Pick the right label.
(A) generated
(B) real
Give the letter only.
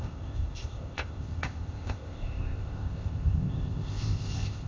A